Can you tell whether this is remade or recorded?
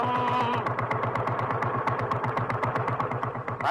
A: remade